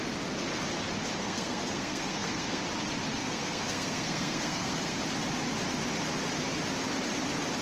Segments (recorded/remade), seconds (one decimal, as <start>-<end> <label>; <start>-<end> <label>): 0.0-1.2 recorded; 1.2-2.6 remade; 2.6-3.2 recorded; 3.2-5.0 remade; 5.0-7.6 recorded